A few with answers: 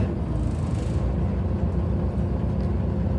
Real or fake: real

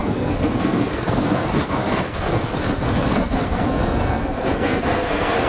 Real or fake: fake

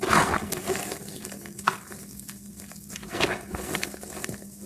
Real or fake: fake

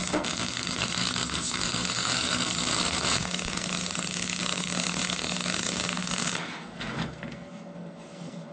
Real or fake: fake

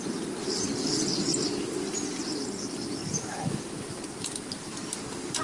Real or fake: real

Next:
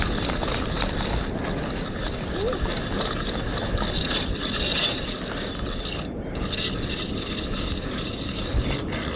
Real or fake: real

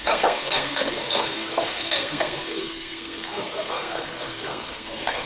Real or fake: fake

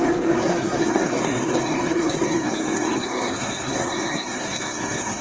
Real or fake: fake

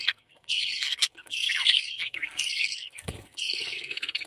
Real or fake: fake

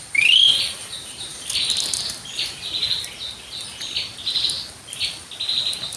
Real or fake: real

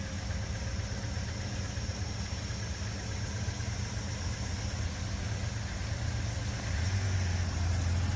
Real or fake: real